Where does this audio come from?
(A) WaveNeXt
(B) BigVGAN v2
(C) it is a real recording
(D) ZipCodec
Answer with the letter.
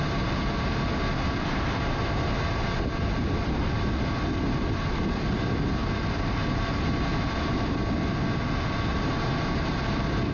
C